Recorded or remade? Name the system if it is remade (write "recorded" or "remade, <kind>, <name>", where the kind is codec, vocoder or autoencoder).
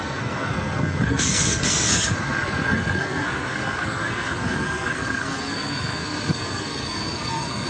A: remade, codec, SNAC